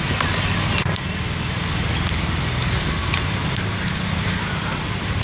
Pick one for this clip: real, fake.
real